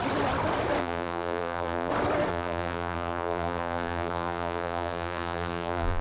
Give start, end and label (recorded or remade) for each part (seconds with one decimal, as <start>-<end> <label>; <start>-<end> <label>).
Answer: 0.0-0.8 recorded; 0.8-1.9 remade; 1.9-2.3 recorded; 2.3-6.0 remade